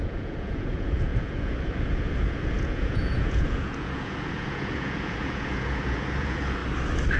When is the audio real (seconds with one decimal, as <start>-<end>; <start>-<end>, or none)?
6.6-7.2